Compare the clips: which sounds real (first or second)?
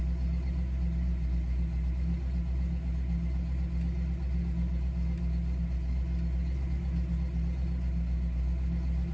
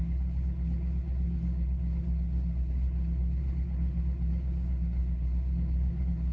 first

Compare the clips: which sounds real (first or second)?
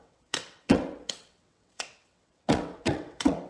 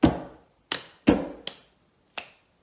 second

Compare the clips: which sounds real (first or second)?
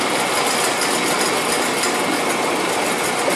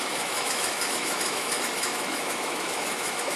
first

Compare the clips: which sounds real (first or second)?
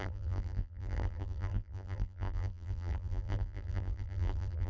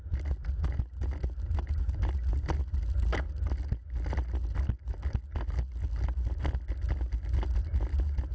second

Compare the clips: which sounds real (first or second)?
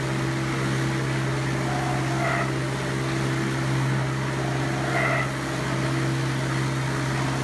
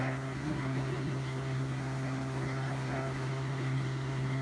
first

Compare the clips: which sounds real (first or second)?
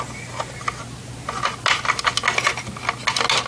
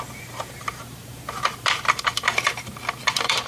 first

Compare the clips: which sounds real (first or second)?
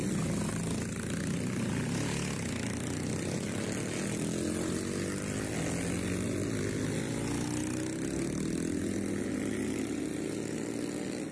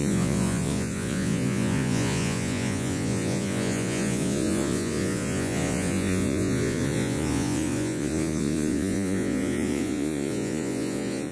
first